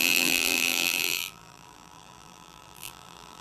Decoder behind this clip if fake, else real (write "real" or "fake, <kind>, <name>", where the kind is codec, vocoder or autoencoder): fake, vocoder, BigVGAN v2